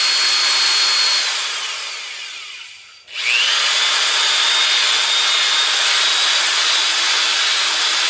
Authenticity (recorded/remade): recorded